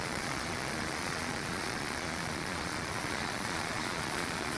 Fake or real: fake